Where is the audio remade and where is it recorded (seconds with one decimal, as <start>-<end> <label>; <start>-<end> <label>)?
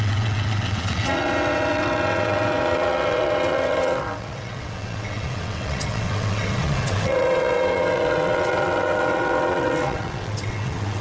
0.0-11.0 remade